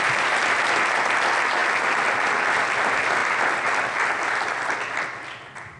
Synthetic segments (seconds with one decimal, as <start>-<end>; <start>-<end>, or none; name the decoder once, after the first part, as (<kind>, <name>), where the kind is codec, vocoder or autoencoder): none